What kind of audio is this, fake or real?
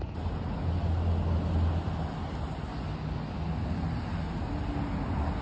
real